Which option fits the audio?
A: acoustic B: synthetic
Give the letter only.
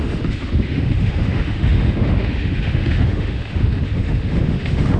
B